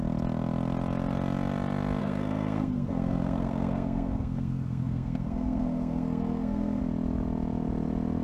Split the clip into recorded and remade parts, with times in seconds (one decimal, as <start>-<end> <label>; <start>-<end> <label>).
0.0-2.0 recorded; 2.0-6.8 remade; 6.8-8.2 recorded